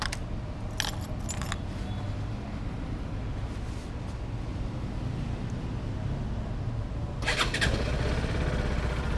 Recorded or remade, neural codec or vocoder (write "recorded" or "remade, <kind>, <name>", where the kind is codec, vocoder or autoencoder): recorded